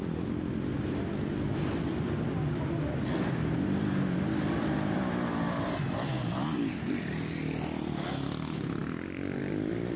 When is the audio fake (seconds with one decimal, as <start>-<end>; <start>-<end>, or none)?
none